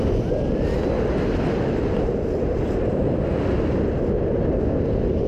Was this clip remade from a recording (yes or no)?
no